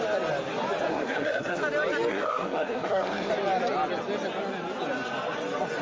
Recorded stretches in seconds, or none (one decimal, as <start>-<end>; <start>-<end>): 0.0-0.9; 1.6-2.1; 3.3-5.8